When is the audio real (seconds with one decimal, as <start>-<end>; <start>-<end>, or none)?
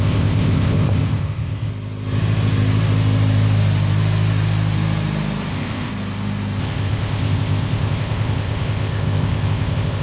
1.7-5.5; 5.9-6.6